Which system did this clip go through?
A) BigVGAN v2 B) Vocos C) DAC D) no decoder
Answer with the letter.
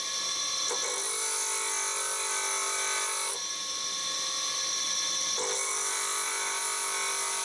D